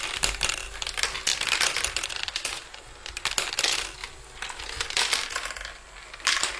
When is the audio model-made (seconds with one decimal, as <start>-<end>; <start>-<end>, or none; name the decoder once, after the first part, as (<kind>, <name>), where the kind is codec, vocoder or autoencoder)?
1.3-2.1 (vocoder, BigVGAN v2)